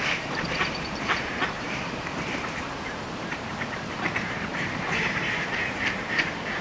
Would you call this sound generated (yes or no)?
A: yes